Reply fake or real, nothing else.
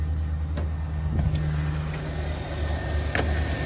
real